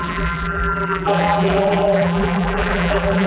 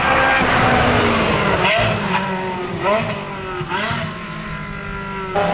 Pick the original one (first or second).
second